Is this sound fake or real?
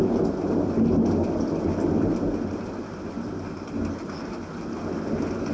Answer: real